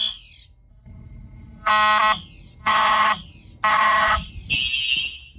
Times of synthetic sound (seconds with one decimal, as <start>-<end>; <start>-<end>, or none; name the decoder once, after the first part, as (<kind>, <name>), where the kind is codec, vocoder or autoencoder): 0.7-1.7 (codec, HILCodec); 2.6-3.1; 3.7-4.3